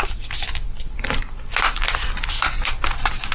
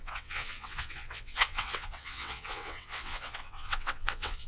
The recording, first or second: first